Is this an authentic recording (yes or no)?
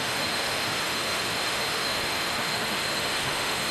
no